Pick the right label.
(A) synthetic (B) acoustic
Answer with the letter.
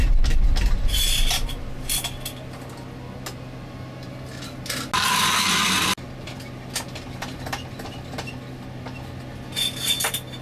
B